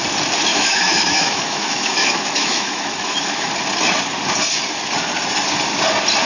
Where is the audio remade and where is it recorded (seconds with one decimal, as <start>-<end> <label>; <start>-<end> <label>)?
0.0-0.5 recorded; 0.5-3.5 remade; 3.5-6.3 recorded

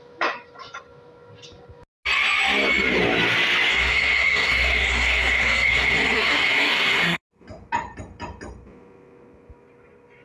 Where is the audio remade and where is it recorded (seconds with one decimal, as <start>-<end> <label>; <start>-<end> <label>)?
0.0-3.7 recorded; 3.7-7.2 remade; 7.2-10.2 recorded